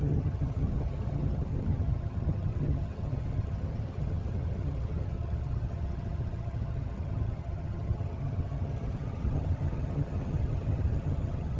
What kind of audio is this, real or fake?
fake